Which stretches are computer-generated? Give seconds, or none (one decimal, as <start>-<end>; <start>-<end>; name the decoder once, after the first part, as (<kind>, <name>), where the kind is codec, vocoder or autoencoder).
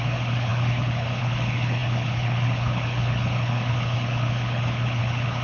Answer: 0.0-5.4 (codec, HILCodec)